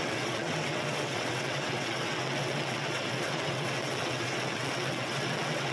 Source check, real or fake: fake